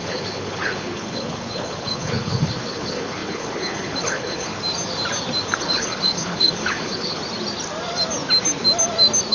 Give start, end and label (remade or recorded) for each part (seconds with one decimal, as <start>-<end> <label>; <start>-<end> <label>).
0.0-4.5 remade; 4.5-5.6 recorded; 5.6-7.2 remade; 7.2-9.3 recorded